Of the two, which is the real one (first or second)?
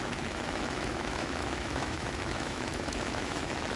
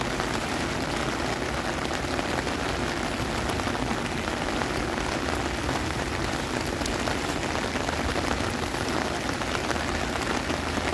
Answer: second